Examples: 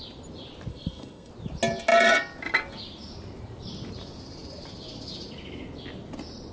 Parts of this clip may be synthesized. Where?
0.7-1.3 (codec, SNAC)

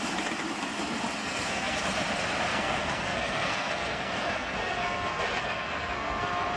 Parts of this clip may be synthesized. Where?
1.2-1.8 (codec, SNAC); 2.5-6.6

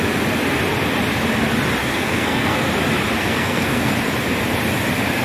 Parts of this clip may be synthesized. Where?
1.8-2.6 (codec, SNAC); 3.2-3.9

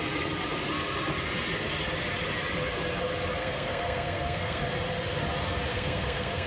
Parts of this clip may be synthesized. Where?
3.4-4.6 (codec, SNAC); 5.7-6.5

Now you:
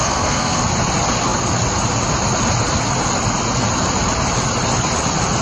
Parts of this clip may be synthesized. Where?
0.0-0.6 (codec, SNAC)

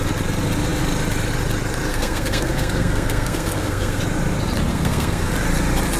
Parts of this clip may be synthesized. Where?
1.9-4.0 (codec, SNAC); 4.7-5.3

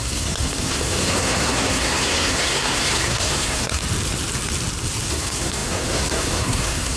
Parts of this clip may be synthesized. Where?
0.0-3.8 (codec, SNAC); 5.1-7.0